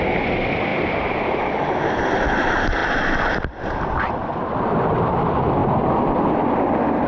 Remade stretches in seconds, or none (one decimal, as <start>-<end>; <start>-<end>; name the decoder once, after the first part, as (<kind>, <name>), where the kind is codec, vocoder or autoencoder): 0.7-2.1 (vocoder, BigVGAN v2)